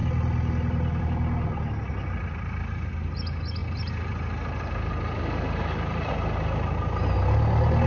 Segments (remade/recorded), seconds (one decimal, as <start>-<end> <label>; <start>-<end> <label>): 0.0-7.9 recorded